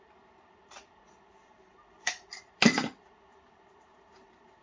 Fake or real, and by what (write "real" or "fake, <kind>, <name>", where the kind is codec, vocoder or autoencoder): fake, vocoder, BigVGAN v2